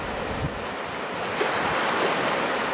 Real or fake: real